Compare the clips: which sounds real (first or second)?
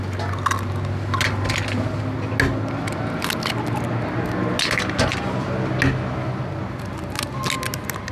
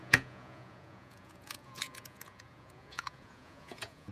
first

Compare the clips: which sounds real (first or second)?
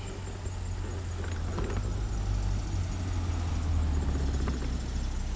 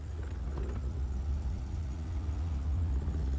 first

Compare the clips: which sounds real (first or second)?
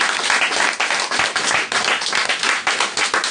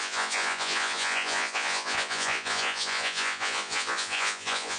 first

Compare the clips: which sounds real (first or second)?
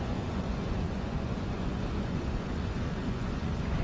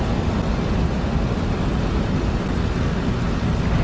second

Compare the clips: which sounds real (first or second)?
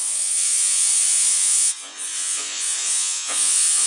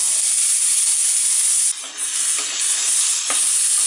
second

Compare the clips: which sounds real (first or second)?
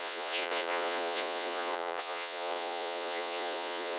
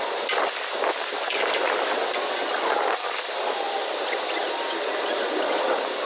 second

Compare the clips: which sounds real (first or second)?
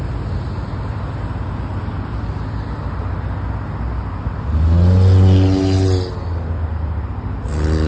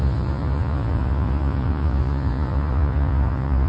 first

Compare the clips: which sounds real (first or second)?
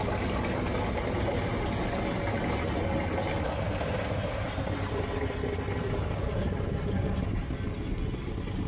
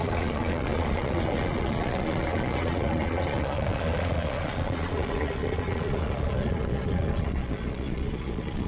first